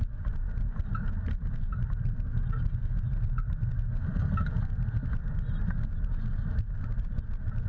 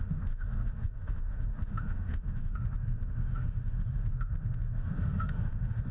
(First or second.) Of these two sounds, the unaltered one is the first